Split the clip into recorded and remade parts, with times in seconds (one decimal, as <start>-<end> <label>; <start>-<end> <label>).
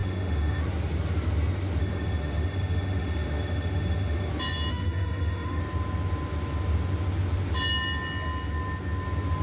0.0-0.6 remade; 0.6-1.8 recorded; 1.8-4.3 remade; 4.3-4.7 recorded; 4.7-5.6 remade; 5.6-9.4 recorded